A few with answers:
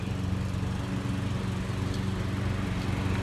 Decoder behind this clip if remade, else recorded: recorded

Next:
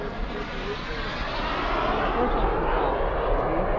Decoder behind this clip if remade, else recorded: recorded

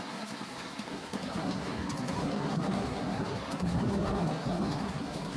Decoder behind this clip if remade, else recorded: remade, codec, SNAC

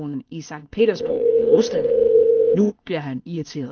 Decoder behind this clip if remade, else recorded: remade, codec, ZipCodec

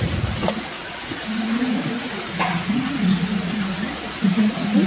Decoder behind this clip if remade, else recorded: remade, vocoder, Vocos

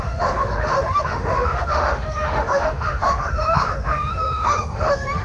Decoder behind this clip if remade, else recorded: remade, autoencoder, DAC-VAE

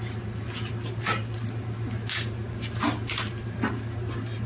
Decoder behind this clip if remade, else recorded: recorded